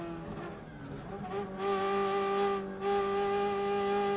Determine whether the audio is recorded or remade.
recorded